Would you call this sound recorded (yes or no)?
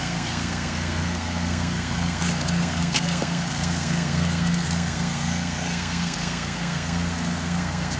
no